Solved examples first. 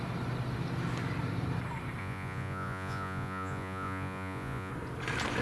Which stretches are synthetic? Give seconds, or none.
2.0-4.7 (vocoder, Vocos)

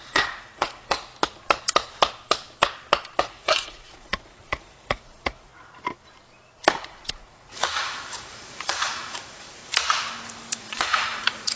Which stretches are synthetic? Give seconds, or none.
0.0-1.1 (vocoder, Vocos); 3.2-5.5; 6.7-9.6; 10.6-11.6

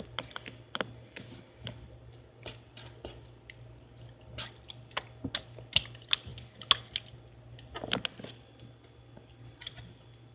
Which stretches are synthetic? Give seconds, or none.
none

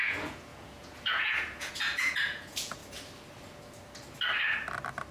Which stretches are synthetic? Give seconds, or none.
0.0-2.8 (vocoder, Vocos)

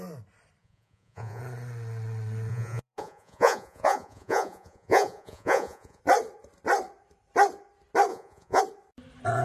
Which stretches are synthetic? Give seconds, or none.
0.6-1.4 (vocoder, Vocos); 2.5-6.0; 8.1-8.6